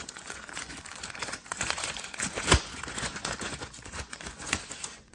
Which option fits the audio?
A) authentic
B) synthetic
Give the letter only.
B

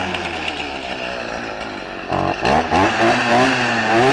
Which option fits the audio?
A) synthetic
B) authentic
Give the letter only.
B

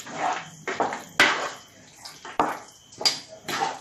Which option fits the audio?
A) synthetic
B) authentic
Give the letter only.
B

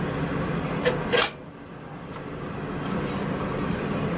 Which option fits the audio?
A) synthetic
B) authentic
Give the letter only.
B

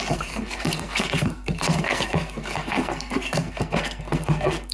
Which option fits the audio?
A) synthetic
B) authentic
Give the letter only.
A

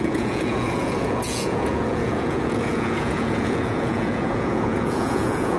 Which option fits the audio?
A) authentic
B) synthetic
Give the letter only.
B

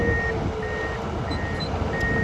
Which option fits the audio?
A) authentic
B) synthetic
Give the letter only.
A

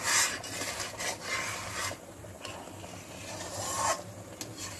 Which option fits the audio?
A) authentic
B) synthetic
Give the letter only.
A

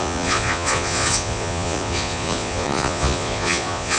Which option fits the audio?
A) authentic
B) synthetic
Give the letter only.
B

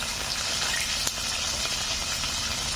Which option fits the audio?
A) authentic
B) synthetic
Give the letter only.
A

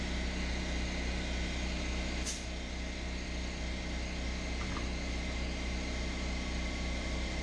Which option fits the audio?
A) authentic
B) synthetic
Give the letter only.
A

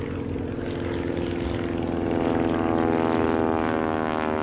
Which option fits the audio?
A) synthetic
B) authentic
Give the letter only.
B